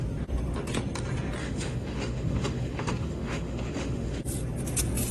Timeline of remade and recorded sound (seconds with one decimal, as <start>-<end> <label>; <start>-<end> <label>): 0.0-1.4 recorded; 1.4-4.2 remade; 4.2-5.1 recorded